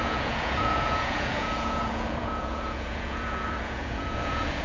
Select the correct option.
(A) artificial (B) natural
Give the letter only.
A